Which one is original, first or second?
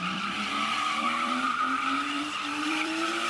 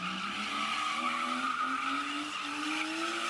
second